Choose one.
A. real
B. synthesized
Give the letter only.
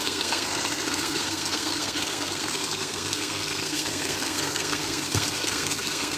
B